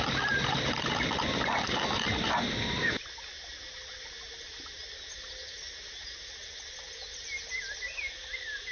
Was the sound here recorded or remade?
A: recorded